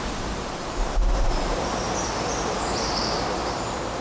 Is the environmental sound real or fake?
real